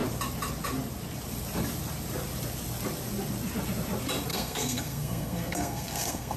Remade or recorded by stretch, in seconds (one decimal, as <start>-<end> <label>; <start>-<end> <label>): 0.0-4.3 recorded; 4.3-6.4 remade